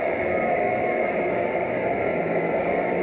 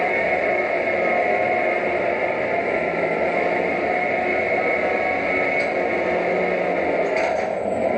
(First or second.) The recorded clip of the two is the second